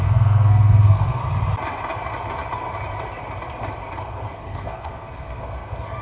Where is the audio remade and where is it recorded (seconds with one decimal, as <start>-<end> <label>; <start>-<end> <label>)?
0.0-1.2 remade; 1.2-4.0 recorded; 4.0-6.0 remade